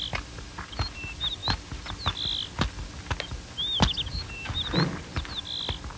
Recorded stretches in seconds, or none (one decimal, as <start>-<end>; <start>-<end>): 0.0-6.0